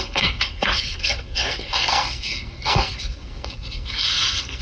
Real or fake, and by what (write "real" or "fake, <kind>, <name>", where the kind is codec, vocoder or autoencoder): fake, codec, SNAC